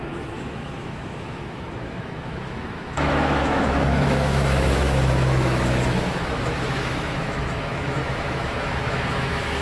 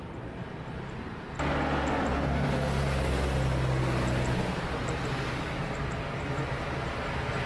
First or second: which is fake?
first